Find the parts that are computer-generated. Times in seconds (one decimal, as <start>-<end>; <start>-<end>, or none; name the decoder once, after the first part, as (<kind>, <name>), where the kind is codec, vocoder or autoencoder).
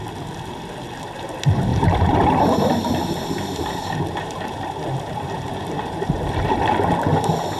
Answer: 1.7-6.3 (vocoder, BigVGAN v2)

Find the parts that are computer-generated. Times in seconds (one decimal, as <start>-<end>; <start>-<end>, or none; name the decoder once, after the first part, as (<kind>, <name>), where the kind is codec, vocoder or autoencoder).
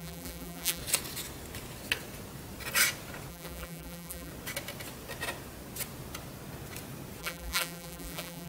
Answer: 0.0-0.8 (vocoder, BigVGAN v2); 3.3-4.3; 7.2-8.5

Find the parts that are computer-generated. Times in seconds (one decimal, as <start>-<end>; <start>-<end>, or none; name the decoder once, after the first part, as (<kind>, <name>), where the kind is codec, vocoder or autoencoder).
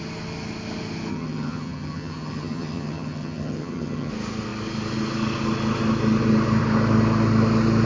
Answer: 1.1-4.1 (vocoder, HiFi-GAN)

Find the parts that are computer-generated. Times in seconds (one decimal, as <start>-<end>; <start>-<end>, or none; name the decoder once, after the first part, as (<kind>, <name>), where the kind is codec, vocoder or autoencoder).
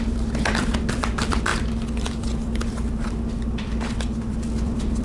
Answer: 0.0-5.0 (vocoder, BigVGAN v2)